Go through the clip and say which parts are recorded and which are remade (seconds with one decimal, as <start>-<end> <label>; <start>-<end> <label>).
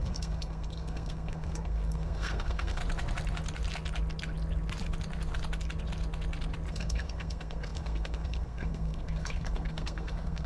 0.0-2.8 remade; 2.8-6.7 recorded; 6.7-10.5 remade